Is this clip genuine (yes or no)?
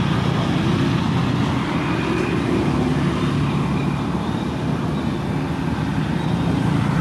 yes